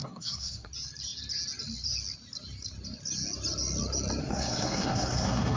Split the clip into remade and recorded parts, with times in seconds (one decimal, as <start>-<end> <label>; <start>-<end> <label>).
0.0-0.7 remade; 0.7-4.2 recorded; 4.2-5.6 remade